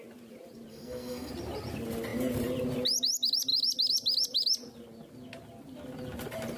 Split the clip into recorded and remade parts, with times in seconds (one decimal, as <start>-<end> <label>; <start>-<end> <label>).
0.0-0.7 recorded; 0.7-1.3 remade; 1.3-6.6 recorded